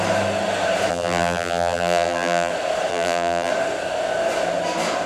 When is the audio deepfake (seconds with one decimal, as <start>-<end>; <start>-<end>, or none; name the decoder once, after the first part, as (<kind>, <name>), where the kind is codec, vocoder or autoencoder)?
0.9-2.5 (vocoder, BigVGAN v2); 2.9-3.5